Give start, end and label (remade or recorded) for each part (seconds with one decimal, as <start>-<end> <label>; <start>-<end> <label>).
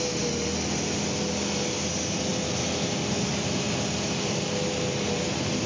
0.0-5.7 recorded